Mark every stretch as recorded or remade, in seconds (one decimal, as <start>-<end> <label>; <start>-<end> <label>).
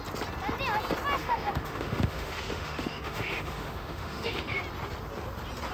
0.0-1.2 recorded; 1.2-4.6 remade; 4.6-5.7 recorded